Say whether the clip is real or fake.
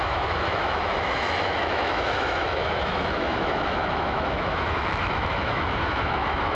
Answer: fake